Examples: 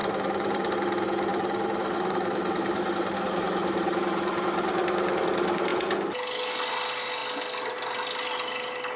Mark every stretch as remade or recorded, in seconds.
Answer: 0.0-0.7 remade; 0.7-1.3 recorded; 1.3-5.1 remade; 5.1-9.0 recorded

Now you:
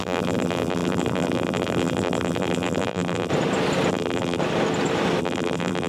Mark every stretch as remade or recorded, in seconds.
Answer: 0.0-3.3 remade; 3.3-3.9 recorded; 3.9-4.4 remade; 4.4-5.2 recorded; 5.2-5.9 remade